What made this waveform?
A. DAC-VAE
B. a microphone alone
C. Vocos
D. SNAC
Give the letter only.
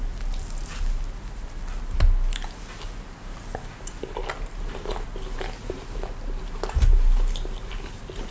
B